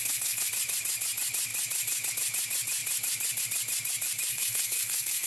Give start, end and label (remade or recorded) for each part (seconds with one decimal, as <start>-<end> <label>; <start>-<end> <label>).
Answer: 0.0-0.5 remade; 0.5-4.3 recorded; 4.3-5.3 remade